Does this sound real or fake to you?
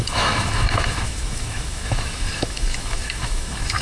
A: fake